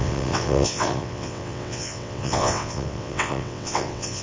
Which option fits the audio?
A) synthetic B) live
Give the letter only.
A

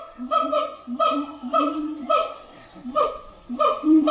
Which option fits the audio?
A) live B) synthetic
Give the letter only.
B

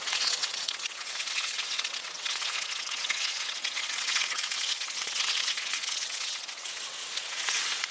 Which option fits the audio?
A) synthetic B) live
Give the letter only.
A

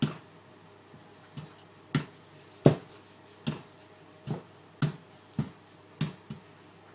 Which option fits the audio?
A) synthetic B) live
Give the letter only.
B